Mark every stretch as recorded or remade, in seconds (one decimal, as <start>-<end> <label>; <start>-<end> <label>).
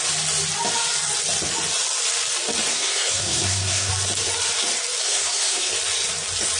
0.0-2.7 recorded; 2.7-3.9 remade; 3.9-5.0 recorded; 5.0-5.7 remade; 5.7-6.6 recorded